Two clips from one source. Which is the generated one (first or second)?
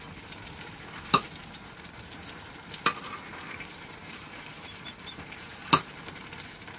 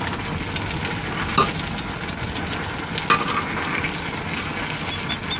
first